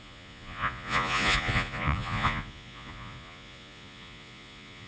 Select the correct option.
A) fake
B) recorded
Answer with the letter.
A